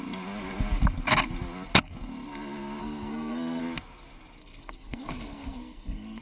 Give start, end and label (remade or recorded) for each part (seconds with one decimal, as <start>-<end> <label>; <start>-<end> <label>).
0.0-2.8 recorded; 2.8-3.6 remade; 3.6-4.4 recorded; 4.4-6.2 remade